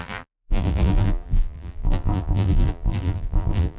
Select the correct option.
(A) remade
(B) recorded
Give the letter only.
A